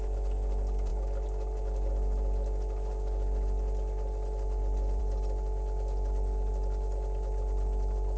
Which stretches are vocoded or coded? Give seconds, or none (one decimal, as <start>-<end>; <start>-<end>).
none